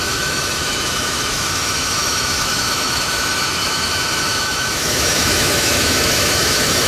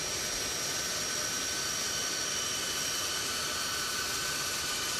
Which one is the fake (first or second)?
first